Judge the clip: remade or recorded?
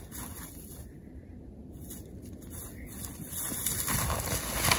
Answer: recorded